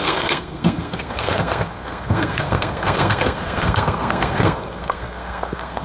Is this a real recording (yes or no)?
no